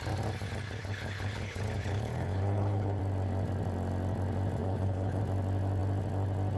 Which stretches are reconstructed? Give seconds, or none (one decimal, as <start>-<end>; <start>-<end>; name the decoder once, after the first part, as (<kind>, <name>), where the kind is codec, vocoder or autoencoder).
0.8-3.0 (codec, HILCodec); 4.6-5.2